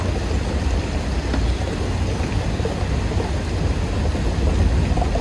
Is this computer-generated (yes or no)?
no